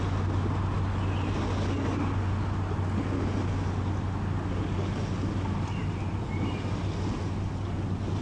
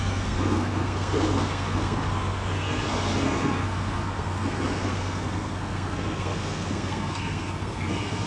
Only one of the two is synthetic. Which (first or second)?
second